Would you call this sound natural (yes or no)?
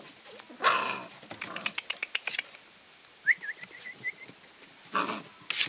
yes